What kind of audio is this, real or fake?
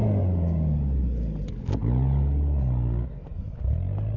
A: real